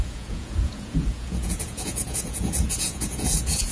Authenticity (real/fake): fake